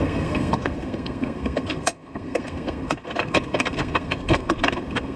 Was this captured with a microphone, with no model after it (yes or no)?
no